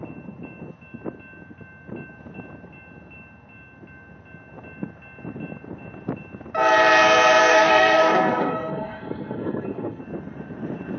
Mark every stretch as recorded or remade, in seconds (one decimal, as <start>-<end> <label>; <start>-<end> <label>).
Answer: 0.0-7.5 recorded; 7.5-10.0 remade; 10.0-11.0 recorded